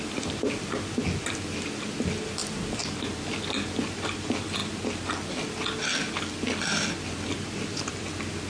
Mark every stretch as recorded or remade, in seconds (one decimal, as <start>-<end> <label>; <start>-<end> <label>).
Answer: 0.0-8.5 recorded